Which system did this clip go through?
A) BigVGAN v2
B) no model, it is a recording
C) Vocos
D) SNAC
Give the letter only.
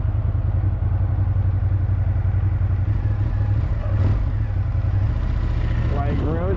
B